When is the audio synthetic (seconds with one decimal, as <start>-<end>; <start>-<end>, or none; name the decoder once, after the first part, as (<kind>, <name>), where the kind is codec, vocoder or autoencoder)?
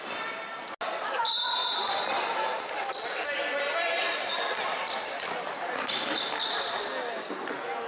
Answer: none